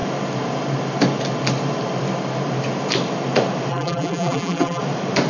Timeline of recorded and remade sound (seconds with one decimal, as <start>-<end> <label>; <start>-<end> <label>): 0.0-3.7 recorded; 3.7-4.8 remade; 4.8-5.3 recorded